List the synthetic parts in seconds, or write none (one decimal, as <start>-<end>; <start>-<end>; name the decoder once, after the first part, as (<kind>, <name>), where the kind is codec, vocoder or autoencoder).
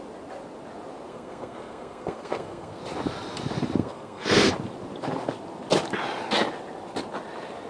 1.1-2.8 (codec, SNAC); 3.8-4.5